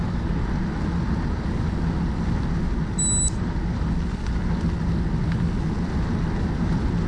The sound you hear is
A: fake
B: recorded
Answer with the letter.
B